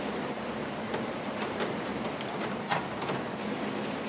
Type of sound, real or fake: real